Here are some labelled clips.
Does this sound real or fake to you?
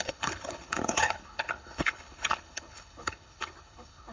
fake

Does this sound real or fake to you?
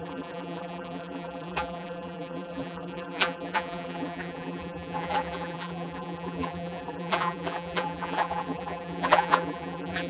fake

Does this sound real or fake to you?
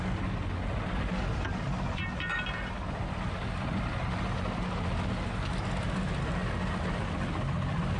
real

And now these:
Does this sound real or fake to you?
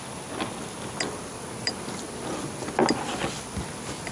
real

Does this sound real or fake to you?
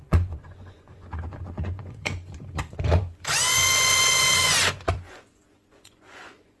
fake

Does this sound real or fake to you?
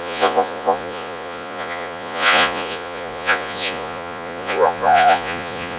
fake